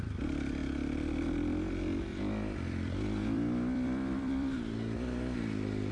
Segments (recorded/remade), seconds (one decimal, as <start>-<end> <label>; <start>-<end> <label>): 0.0-0.6 recorded; 0.6-1.1 remade; 1.1-2.1 recorded; 2.1-5.9 remade